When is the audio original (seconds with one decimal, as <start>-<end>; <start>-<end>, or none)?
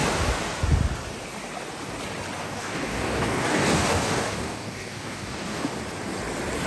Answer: 0.0-2.4; 5.8-6.7